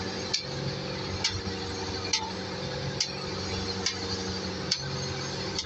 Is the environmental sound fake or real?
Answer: real